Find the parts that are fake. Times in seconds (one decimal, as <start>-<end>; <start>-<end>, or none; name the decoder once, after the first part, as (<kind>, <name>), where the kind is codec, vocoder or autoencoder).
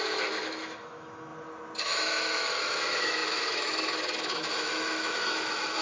0.0-1.3 (autoencoder, DAC-VAE); 1.8-5.8